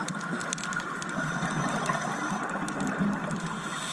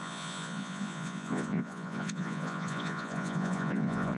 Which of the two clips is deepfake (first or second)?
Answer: second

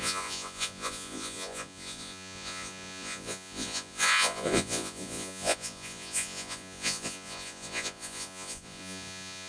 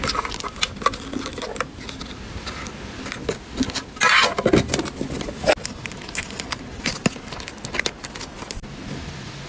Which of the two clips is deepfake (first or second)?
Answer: first